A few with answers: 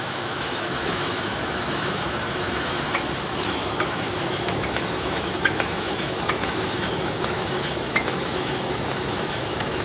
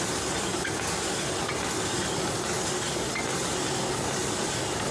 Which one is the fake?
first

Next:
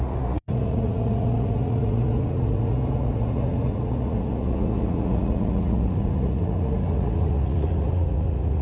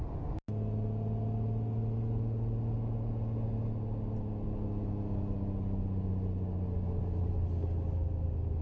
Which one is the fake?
first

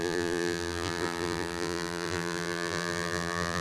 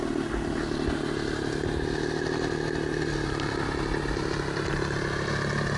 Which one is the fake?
first